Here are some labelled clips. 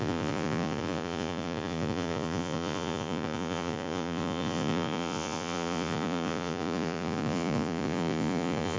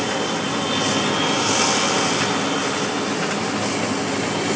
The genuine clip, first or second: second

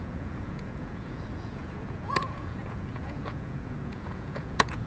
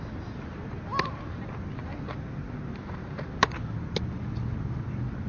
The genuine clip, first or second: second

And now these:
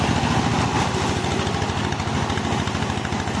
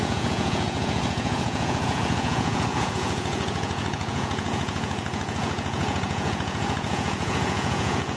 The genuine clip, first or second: first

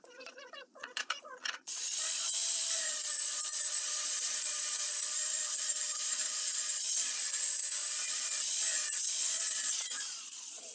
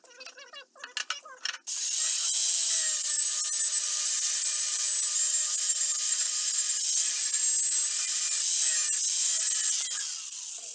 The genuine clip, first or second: second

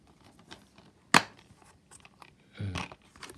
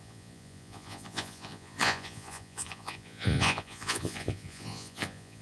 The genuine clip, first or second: first